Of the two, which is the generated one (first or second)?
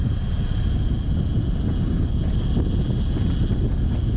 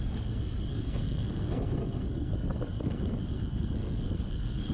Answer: second